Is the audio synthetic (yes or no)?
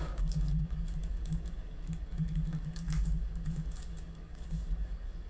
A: yes